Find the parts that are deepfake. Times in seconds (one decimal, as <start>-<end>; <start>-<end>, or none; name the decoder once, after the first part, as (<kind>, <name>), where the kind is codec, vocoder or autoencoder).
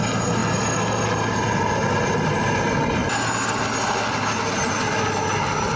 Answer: none